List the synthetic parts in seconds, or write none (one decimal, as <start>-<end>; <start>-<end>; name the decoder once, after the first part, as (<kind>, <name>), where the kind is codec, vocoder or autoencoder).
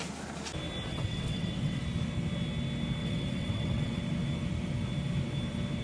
0.9-1.8 (vocoder, WaveNeXt); 3.0-4.0